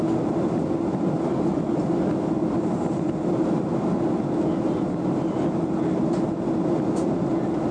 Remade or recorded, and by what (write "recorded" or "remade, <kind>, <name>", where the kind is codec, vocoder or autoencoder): recorded